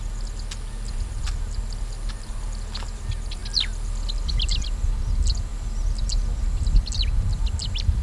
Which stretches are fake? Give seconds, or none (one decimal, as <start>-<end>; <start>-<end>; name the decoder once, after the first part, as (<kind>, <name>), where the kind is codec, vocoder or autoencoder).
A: none